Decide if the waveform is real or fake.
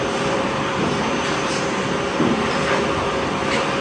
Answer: fake